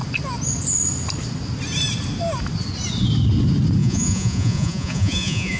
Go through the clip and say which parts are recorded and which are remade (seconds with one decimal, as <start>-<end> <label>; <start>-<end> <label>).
0.0-3.8 recorded; 3.8-5.6 remade